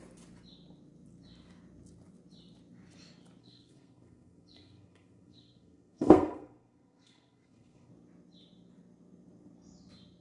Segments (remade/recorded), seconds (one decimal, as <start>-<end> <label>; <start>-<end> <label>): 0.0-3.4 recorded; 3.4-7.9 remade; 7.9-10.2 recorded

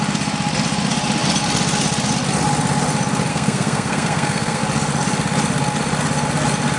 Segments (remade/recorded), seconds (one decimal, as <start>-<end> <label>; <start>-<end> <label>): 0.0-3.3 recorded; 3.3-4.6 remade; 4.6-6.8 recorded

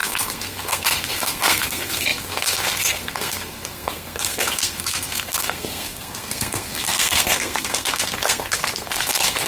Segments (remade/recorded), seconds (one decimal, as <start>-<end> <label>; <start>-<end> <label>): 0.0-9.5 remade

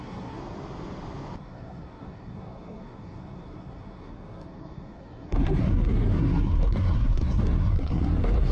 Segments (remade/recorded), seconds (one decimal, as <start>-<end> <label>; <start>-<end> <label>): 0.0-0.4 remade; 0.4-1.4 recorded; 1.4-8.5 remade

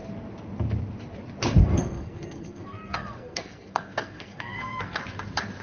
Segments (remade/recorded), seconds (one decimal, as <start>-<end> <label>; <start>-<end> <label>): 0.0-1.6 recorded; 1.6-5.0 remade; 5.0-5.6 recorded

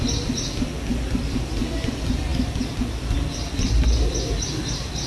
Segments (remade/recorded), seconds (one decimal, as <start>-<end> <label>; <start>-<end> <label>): 0.0-5.1 recorded

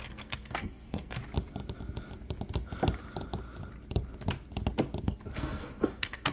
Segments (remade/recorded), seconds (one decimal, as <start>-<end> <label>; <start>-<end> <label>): 0.0-1.2 remade; 1.2-5.0 recorded; 5.0-6.3 remade

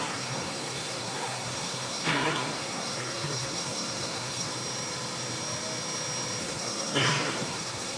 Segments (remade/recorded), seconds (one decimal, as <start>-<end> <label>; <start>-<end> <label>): 0.0-4.5 remade; 4.5-6.4 recorded; 6.4-8.0 remade